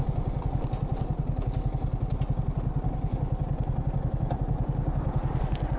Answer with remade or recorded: recorded